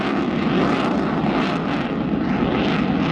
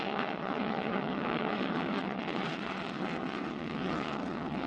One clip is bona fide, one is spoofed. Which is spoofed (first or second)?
second